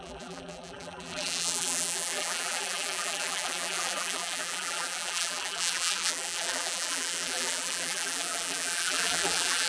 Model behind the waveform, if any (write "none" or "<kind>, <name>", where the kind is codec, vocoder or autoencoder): vocoder, BigVGAN v2